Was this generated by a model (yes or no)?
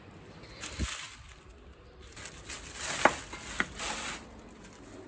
no